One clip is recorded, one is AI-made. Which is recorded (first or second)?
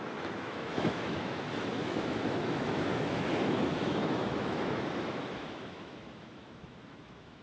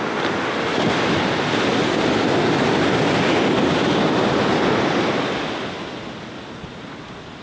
second